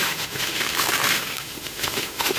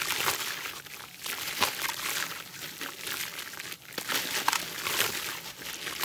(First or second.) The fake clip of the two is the first